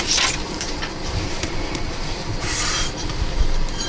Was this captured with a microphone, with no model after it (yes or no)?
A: no